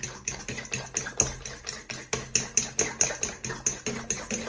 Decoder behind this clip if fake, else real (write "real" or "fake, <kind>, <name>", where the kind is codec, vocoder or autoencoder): real